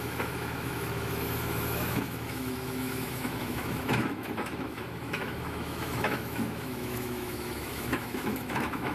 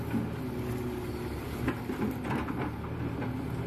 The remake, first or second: first